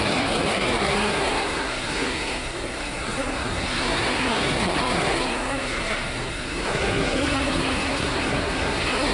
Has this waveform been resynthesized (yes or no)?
yes